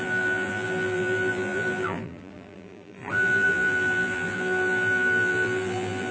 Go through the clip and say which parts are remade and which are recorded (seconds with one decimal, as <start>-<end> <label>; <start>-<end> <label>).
0.0-6.1 remade